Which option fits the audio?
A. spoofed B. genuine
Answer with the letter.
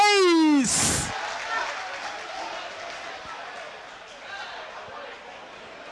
B